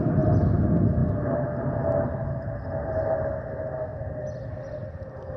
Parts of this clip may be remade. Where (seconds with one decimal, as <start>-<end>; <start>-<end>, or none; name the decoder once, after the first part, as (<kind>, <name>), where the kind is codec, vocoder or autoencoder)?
none